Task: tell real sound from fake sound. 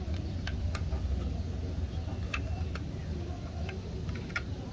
real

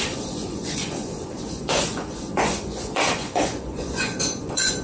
fake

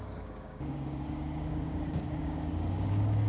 fake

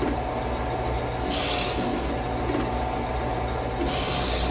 real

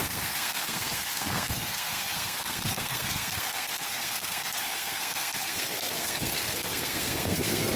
fake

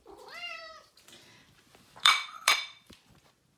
fake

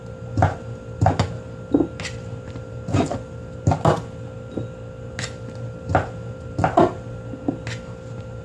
real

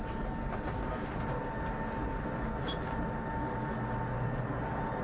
real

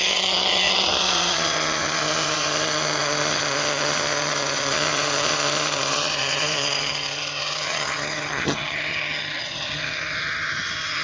fake